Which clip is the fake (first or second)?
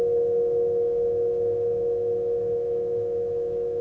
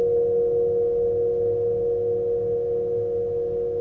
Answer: first